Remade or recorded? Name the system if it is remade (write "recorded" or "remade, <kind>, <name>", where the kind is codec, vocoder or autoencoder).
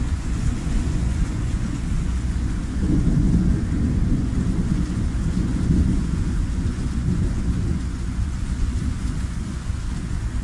remade, vocoder, Vocos